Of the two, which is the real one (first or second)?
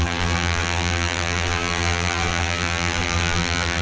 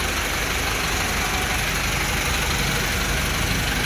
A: second